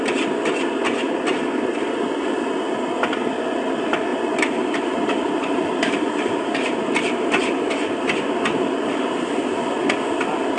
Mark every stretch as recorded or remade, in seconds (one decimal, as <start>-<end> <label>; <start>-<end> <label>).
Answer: 0.0-4.1 recorded; 4.1-9.2 remade; 9.2-10.6 recorded

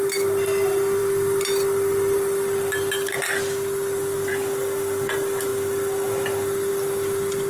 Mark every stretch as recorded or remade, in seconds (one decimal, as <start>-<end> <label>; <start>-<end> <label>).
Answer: 0.0-7.5 recorded

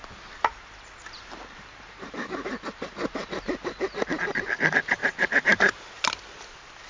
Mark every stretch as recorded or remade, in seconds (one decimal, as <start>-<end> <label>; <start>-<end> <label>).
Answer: 0.0-4.1 remade; 4.1-5.0 recorded; 5.0-6.0 remade; 6.0-6.9 recorded

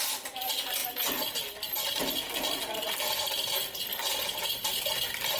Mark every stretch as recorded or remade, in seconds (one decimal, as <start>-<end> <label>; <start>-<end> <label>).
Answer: 0.0-3.9 recorded; 3.9-4.9 remade; 4.9-5.4 recorded

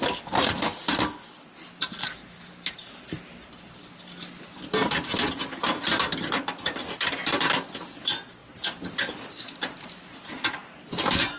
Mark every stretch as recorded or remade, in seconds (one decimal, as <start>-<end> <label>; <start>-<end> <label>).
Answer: 0.0-2.0 recorded; 2.0-3.1 remade; 3.1-8.4 recorded; 8.4-9.1 remade; 9.1-11.4 recorded

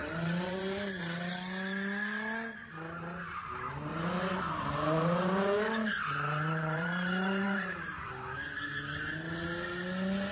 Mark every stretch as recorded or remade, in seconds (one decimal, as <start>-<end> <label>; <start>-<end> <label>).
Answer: 0.0-1.0 remade; 1.0-3.9 recorded; 3.9-8.1 remade; 8.1-10.3 recorded

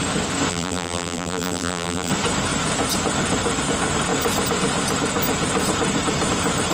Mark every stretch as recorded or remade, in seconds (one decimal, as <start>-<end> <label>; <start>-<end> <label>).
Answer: 0.0-0.5 recorded; 0.5-2.1 remade; 2.1-6.7 recorded